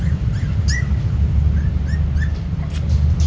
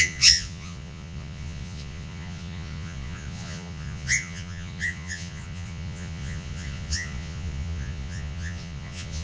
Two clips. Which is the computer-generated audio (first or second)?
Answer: second